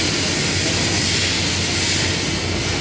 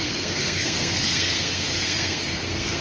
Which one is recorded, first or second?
first